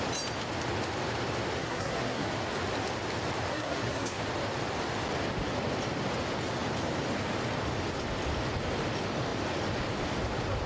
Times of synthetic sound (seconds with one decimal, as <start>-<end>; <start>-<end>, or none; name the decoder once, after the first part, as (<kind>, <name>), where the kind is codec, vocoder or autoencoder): 1.6-2.3 (codec, SNAC); 3.5-4.2